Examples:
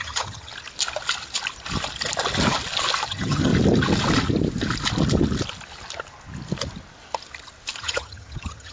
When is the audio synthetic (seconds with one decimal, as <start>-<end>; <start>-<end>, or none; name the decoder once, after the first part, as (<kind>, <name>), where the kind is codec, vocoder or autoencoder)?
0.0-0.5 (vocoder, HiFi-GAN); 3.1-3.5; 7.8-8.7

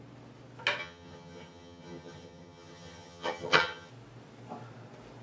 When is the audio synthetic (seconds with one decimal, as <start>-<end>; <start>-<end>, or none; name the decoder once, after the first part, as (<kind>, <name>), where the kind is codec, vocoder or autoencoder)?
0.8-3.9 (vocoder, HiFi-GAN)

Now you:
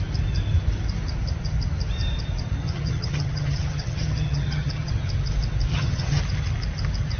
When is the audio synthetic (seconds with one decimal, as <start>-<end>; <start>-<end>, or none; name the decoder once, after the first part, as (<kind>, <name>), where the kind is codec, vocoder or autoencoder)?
2.6-4.9 (vocoder, HiFi-GAN); 5.7-6.2

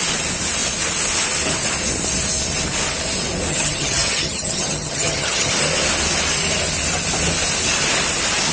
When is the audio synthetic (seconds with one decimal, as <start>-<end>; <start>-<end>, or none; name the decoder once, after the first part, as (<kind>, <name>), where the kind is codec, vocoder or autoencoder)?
3.5-5.5 (vocoder, HiFi-GAN)

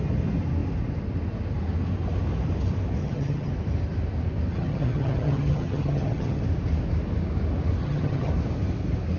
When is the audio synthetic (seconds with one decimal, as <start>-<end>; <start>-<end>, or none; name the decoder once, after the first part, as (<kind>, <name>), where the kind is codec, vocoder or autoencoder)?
3.0-3.5 (vocoder, HiFi-GAN); 4.5-6.4; 7.8-8.3

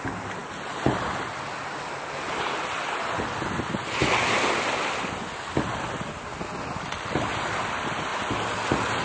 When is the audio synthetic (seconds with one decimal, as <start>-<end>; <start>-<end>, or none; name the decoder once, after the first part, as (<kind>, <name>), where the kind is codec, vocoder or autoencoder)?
none

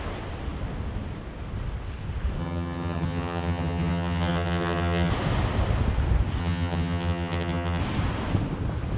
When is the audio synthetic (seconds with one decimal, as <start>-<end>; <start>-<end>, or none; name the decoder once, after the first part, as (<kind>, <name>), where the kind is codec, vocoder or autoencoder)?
2.4-5.1 (vocoder, HiFi-GAN); 6.4-7.8

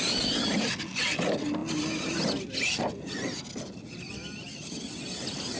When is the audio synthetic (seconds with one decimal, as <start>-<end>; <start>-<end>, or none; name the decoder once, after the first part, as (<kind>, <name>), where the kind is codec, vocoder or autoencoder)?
none